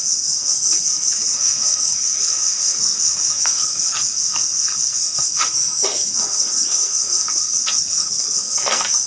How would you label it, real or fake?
fake